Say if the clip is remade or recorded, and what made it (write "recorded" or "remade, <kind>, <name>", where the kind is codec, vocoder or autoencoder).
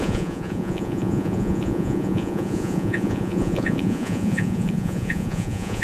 remade, vocoder, Vocos